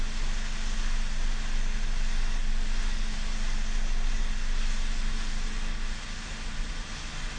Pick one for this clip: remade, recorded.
recorded